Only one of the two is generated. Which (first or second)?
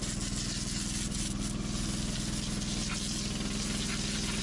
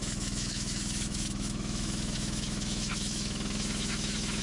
second